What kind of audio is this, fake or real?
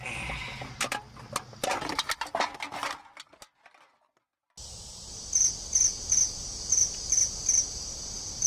real